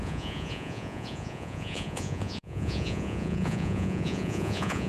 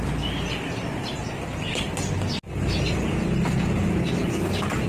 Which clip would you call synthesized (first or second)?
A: first